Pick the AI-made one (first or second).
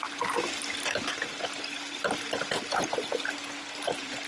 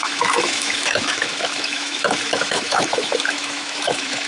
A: second